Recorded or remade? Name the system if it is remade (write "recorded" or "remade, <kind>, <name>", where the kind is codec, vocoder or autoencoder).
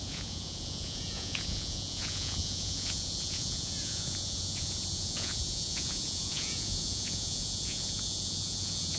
remade, vocoder, Vocos